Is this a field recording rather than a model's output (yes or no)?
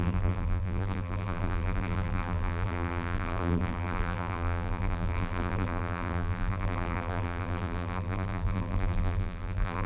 no